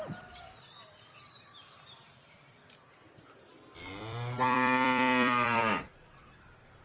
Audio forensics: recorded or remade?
remade